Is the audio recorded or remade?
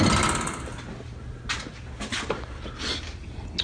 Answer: recorded